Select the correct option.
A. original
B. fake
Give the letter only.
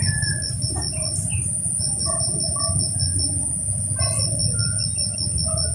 A